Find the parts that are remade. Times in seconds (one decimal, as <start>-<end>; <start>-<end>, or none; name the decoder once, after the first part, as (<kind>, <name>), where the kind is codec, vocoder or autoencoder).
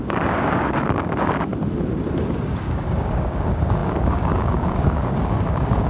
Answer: 0.0-1.5 (codec, DAC); 2.3-5.9